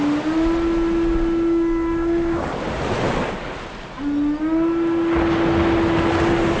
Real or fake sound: real